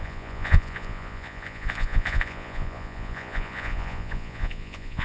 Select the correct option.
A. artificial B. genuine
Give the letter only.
A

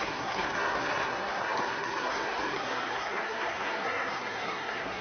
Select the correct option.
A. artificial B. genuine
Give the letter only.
A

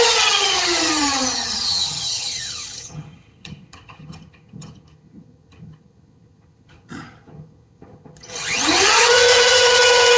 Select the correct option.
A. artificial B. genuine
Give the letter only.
A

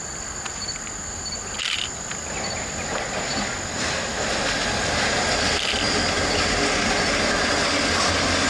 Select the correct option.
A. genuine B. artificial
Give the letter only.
A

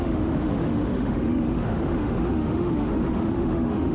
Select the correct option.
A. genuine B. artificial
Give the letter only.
B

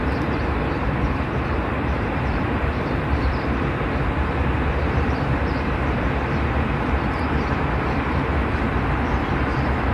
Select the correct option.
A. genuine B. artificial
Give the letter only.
B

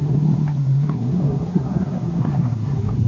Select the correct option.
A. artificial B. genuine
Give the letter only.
A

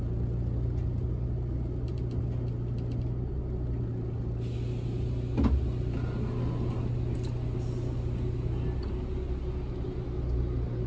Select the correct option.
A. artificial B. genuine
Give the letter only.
B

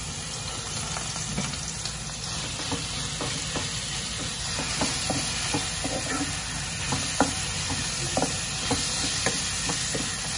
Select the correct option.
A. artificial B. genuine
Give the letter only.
B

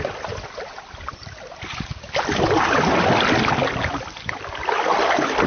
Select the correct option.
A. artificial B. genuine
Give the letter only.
B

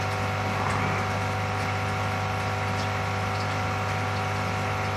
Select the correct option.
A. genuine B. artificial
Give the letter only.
B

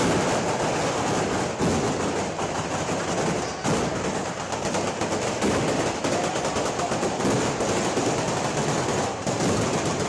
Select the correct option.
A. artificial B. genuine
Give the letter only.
B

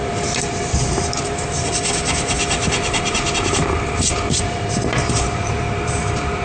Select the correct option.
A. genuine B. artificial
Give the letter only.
B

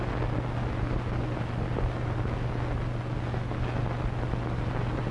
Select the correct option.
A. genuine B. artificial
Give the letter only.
A